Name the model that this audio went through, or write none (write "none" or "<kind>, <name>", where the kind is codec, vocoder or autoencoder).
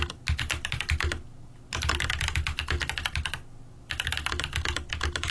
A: none